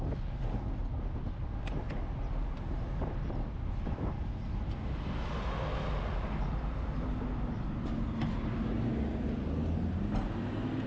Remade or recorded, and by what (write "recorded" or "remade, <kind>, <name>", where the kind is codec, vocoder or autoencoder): recorded